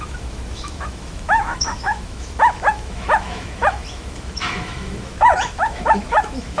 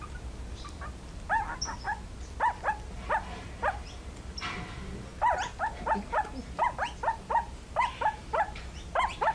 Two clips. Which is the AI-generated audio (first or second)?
first